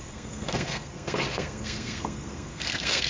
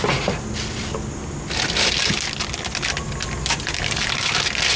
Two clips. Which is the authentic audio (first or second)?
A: second